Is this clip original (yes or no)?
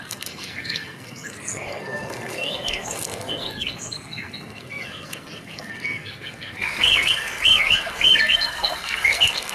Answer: no